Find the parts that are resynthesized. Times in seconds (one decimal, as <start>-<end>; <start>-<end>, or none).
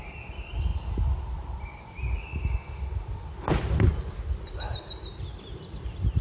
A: none